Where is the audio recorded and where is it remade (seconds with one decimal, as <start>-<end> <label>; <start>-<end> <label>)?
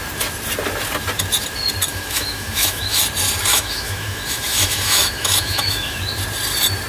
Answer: 0.0-1.9 recorded; 1.9-3.0 remade; 3.0-3.5 recorded; 3.5-6.0 remade; 6.0-6.9 recorded